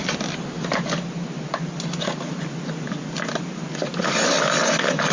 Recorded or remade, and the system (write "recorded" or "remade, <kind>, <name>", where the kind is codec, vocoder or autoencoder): recorded